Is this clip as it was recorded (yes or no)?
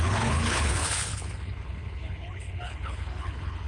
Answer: no